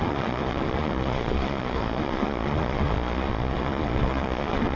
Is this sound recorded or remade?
remade